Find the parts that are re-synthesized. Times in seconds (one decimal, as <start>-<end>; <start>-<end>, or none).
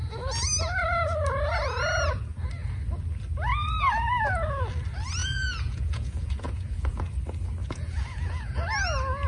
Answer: 5.2-7.0; 7.6-8.6